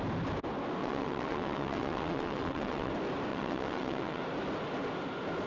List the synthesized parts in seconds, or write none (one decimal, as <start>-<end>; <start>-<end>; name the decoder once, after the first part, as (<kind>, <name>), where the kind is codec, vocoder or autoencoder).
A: 0.8-2.9 (vocoder, WaveNeXt); 3.3-4.2